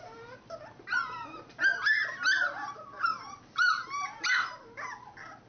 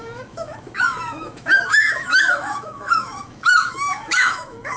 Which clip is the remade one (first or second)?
second